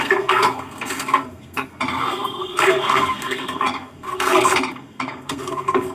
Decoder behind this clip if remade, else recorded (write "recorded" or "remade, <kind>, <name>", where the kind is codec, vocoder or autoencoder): remade, codec, SNAC